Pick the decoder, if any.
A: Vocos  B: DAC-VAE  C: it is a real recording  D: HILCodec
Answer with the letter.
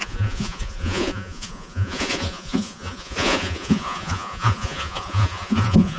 A